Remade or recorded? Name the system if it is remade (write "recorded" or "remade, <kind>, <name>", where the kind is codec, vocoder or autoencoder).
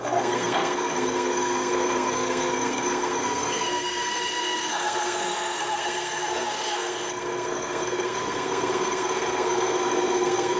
remade, codec, SNAC